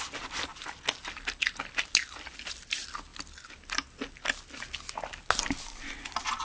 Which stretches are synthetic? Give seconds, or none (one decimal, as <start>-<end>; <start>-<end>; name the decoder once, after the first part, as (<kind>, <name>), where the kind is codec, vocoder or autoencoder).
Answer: none